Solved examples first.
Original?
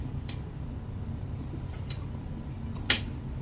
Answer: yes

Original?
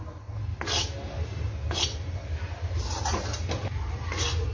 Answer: yes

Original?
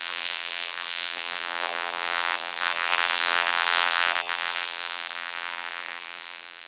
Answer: no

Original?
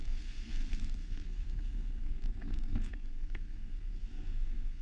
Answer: no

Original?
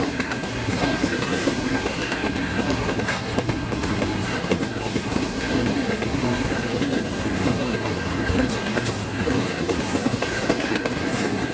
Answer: no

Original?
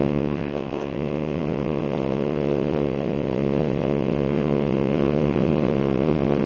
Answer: no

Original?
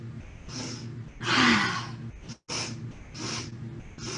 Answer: yes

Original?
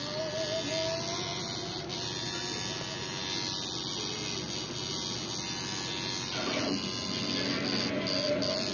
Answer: yes